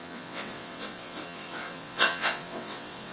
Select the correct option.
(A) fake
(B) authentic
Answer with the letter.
A